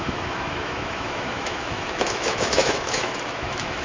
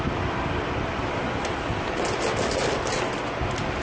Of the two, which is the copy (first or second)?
first